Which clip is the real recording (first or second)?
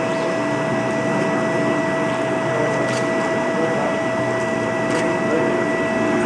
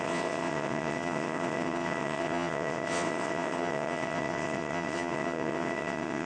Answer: first